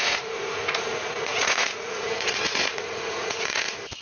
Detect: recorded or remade remade